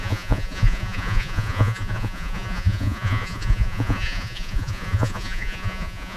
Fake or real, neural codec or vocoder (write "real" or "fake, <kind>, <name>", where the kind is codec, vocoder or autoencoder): fake, vocoder, Vocos